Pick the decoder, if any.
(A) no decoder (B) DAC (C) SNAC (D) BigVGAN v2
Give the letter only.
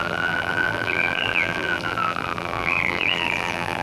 D